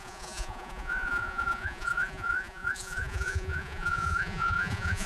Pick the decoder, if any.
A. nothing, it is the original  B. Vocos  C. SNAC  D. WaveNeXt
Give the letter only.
B